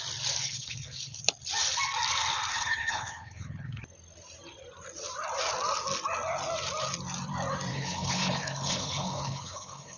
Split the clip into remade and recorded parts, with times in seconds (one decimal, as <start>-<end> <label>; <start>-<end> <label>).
0.0-0.4 recorded; 0.4-1.2 remade; 1.2-2.5 recorded; 2.5-3.8 remade; 3.8-7.7 recorded; 7.7-10.0 remade